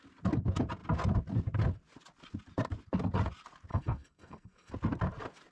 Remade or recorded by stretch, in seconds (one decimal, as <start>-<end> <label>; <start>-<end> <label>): 0.0-3.7 recorded; 3.7-4.7 remade; 4.7-5.5 recorded